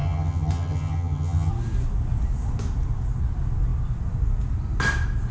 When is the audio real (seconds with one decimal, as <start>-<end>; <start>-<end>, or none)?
1.5-5.3